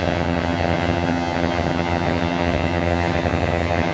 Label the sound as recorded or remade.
remade